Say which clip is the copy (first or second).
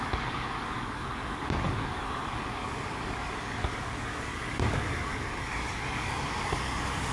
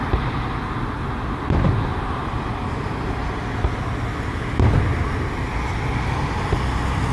first